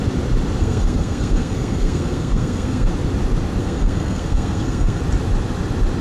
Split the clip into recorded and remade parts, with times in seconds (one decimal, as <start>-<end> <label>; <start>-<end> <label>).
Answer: 0.0-0.6 recorded; 0.6-2.9 remade; 2.9-3.6 recorded; 3.6-5.0 remade; 5.0-6.0 recorded